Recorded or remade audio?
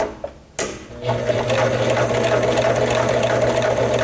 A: recorded